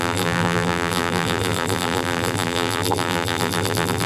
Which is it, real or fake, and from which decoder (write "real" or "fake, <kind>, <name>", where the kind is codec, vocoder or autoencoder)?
fake, vocoder, BigVGAN v2